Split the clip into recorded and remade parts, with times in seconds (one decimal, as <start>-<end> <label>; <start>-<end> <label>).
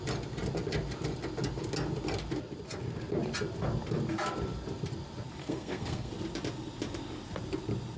0.0-5.4 recorded; 5.4-6.1 remade; 6.1-8.0 recorded